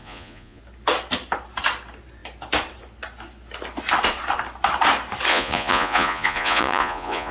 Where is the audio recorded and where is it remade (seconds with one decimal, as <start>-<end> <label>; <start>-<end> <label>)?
0.0-0.6 remade; 0.6-5.3 recorded; 5.3-7.3 remade